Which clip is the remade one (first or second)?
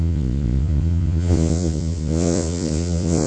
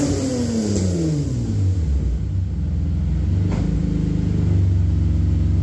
first